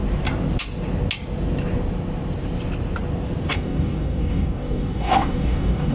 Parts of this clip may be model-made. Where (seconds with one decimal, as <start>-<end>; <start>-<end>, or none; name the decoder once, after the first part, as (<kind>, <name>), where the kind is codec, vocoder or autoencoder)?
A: 3.5-5.9 (codec, DAC)

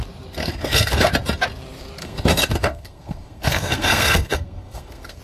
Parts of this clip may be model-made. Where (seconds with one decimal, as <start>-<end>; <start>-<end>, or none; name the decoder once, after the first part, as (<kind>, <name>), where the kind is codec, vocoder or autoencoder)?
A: 0.4-1.1 (codec, SNAC); 2.0-5.2

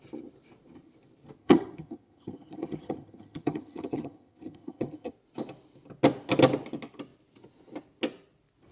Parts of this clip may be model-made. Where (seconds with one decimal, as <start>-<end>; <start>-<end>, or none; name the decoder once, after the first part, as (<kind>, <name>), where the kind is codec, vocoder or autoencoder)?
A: 1.4-5.1 (vocoder, HiFi-GAN)

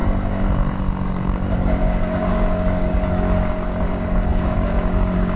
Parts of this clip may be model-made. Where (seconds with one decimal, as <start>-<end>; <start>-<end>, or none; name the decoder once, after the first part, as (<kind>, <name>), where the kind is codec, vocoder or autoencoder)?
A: 0.0-5.4 (codec, DAC)

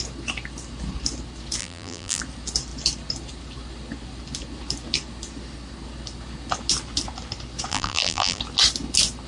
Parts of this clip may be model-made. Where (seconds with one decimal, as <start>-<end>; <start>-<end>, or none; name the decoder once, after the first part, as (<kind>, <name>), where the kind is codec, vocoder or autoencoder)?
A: 1.6-2.2 (vocoder, BigVGAN v2); 7.7-8.4

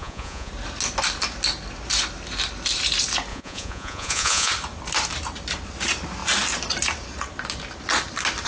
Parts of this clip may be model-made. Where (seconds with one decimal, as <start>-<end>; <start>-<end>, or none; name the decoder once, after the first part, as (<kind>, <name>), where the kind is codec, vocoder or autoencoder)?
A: 0.0-0.5 (vocoder, Vocos); 3.3-4.5

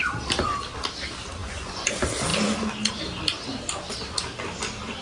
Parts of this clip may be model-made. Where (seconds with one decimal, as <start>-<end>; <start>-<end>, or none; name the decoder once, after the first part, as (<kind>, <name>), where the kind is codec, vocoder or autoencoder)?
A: 1.4-1.9 (vocoder, Vocos)

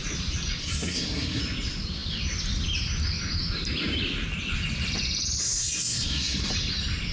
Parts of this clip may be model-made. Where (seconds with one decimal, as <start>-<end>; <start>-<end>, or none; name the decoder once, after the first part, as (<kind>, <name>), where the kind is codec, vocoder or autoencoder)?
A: 0.6-1.4 (codec, SNAC); 5.4-6.5